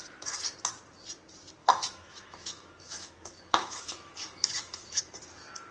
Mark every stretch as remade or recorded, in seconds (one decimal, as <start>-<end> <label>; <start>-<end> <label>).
0.0-1.6 recorded; 1.6-5.0 remade; 5.0-5.7 recorded